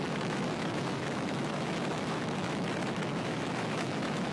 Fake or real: fake